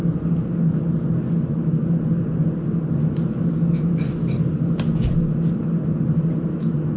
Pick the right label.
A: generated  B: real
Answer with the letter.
B